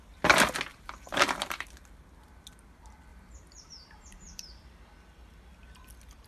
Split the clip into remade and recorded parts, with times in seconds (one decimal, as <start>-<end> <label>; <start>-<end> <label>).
0.0-0.7 recorded; 0.7-1.7 remade; 1.7-3.1 recorded; 3.1-4.8 remade; 4.8-6.3 recorded